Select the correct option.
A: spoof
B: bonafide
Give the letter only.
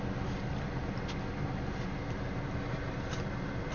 B